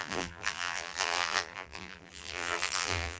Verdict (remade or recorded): remade